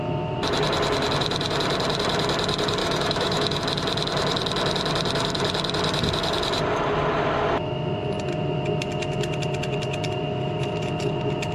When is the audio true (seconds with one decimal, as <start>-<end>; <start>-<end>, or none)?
0.0-2.8; 3.6-11.5